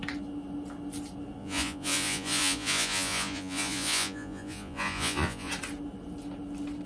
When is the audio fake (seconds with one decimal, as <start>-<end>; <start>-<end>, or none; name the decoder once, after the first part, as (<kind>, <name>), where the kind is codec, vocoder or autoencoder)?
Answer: 1.4-5.5 (vocoder, Vocos)

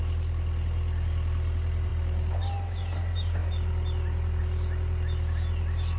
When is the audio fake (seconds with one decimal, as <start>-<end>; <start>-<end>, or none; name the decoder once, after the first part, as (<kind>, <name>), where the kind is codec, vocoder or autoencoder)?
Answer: none

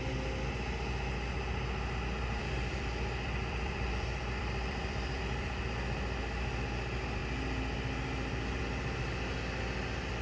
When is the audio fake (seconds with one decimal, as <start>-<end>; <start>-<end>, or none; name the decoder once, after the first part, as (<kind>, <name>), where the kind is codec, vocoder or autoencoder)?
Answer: 2.4-5.6 (vocoder, BigVGAN v2)

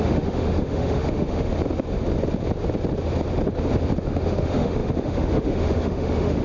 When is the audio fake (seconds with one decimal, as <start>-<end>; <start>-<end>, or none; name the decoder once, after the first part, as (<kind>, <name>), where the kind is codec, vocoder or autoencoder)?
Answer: 0.0-1.5 (autoencoder, DAC-VAE); 4.0-6.4

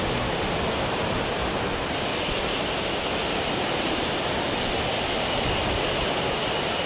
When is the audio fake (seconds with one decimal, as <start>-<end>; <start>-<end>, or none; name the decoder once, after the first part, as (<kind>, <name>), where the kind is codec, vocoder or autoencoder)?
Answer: none

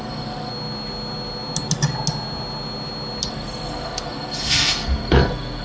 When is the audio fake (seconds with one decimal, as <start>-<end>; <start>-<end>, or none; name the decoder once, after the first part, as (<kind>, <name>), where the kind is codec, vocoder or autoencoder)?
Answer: 0.0-0.5 (codec, SNAC); 3.3-5.6